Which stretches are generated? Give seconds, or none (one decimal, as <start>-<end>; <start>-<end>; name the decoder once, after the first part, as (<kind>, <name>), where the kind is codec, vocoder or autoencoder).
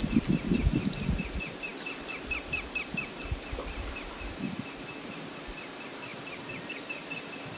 none